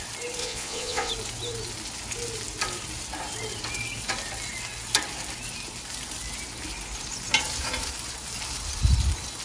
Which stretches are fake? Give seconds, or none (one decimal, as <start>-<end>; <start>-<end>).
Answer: 0.4-1.1